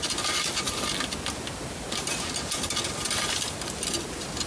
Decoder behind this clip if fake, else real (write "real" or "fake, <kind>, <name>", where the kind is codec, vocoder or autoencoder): real